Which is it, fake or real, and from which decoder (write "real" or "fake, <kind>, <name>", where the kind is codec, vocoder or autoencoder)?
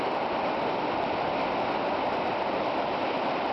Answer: real